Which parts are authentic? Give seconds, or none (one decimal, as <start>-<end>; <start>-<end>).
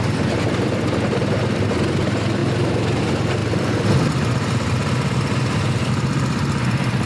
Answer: 0.0-7.1